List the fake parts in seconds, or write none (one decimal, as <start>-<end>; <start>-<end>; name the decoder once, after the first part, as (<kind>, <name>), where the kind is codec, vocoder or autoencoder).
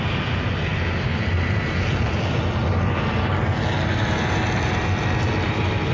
none